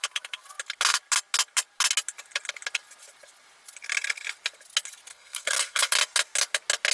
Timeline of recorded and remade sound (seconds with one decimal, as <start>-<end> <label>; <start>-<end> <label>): 0.0-5.1 recorded; 5.1-5.9 remade; 5.9-6.9 recorded